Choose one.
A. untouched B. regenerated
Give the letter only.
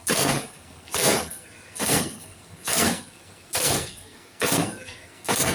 B